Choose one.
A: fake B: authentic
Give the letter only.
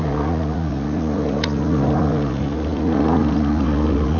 A